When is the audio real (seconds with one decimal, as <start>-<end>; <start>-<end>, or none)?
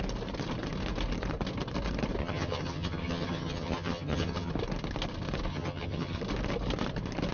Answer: 0.0-2.2; 4.5-5.5; 6.2-7.3